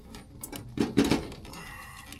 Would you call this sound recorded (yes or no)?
yes